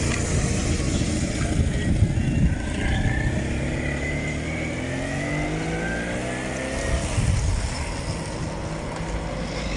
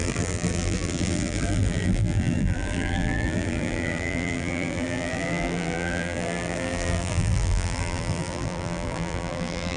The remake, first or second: second